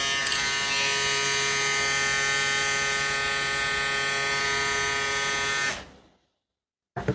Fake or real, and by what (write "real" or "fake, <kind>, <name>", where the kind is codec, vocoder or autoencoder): real